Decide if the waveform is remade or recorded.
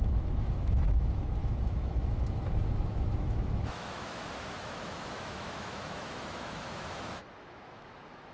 remade